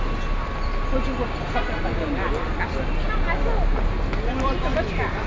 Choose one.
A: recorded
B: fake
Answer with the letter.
A